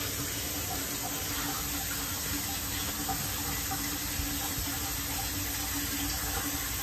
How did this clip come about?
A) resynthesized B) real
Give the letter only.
B